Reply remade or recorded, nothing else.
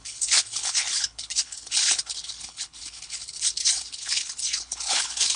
remade